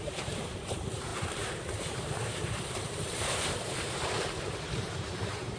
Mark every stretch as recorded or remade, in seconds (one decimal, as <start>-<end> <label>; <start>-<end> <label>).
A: 0.0-5.6 remade